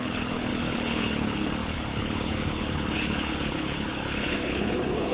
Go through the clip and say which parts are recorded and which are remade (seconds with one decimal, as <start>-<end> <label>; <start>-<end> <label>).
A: 0.0-5.1 remade